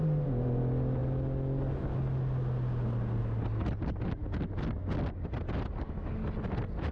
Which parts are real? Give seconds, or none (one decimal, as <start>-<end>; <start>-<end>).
0.0-6.9